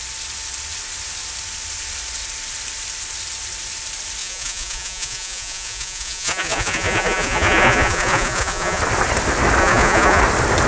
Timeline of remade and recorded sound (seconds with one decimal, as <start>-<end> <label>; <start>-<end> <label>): 0.0-4.2 recorded; 4.2-8.8 remade; 8.8-9.6 recorded; 9.6-10.2 remade; 10.2-10.7 recorded

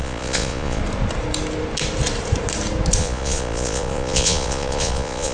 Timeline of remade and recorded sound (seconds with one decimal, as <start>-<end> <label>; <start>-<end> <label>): 0.0-0.8 remade; 0.8-3.0 recorded; 3.0-5.3 remade

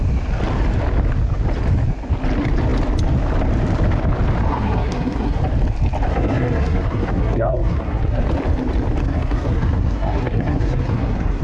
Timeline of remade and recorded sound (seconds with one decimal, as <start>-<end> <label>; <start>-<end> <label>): 0.0-4.5 recorded; 4.5-5.4 remade; 5.4-6.1 recorded; 6.1-8.2 remade; 8.2-9.0 recorded; 9.0-11.4 remade

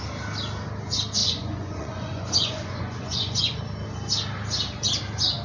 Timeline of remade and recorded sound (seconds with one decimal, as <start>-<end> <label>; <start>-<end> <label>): 0.0-1.2 recorded; 1.2-3.6 remade; 3.6-5.4 recorded

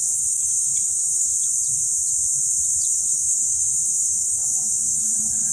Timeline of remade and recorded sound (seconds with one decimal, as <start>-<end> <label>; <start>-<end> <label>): 0.0-1.3 remade; 1.3-2.9 recorded; 2.9-5.5 remade

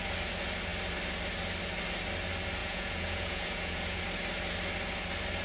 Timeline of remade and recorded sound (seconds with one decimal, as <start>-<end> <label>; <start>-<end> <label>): 0.0-2.6 recorded; 2.6-4.0 remade; 4.0-5.4 recorded

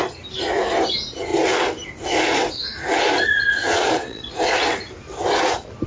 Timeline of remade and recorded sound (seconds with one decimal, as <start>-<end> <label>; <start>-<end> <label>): 0.0-3.6 recorded; 3.6-4.3 remade; 4.3-5.9 recorded